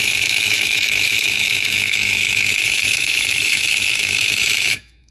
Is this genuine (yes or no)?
no